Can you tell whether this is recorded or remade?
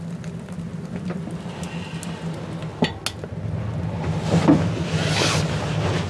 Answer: recorded